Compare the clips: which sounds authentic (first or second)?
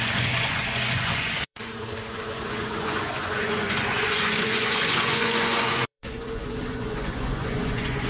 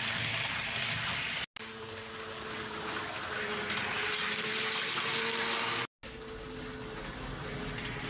second